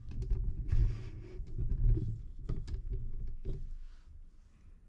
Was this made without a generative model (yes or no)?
yes